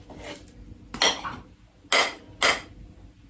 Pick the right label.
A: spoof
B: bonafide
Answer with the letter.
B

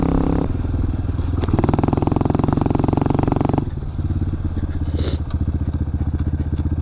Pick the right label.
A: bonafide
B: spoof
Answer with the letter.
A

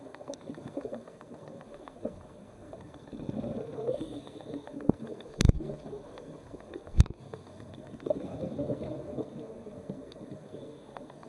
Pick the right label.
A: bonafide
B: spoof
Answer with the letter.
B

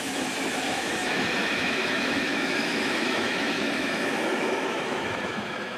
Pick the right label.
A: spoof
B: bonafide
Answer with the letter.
A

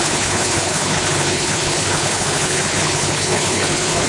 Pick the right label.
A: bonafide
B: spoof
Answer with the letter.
B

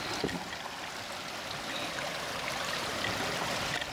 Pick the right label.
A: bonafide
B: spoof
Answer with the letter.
A